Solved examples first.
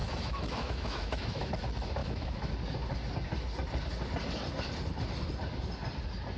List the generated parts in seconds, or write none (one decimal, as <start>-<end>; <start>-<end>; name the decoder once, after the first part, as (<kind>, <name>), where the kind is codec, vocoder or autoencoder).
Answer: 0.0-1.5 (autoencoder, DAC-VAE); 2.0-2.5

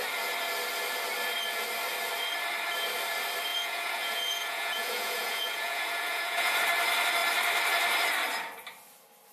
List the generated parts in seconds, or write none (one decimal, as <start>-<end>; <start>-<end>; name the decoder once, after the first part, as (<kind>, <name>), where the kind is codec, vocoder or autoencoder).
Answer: 3.5-6.6 (vocoder, Vocos)

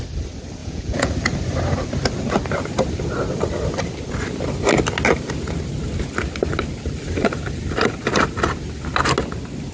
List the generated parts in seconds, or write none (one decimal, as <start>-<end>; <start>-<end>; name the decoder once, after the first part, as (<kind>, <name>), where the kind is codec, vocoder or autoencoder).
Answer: 0.6-1.1 (vocoder, Vocos)

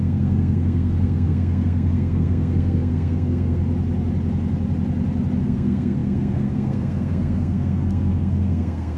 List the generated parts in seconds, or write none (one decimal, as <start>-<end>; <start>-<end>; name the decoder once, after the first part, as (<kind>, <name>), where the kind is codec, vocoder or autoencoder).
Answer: 0.0-3.6 (codec, SNAC); 5.4-9.0

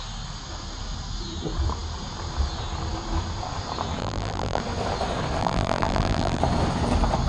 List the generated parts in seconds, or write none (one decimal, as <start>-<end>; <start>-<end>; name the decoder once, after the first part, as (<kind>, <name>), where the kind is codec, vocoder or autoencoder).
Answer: 4.0-4.6 (vocoder, BigVGAN v2); 5.4-6.4

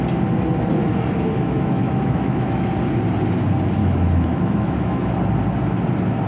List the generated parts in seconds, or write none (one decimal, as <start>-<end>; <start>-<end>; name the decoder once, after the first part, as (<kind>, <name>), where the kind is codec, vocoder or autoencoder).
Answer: 0.8-2.7 (autoencoder, DAC-VAE); 3.8-5.2